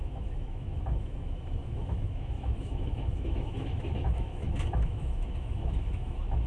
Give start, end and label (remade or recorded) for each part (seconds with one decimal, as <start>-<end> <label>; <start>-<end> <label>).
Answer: 0.0-6.5 remade